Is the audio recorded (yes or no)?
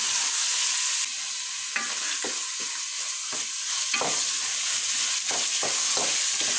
yes